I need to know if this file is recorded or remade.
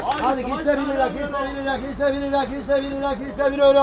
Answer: recorded